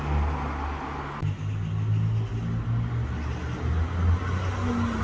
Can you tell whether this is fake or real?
real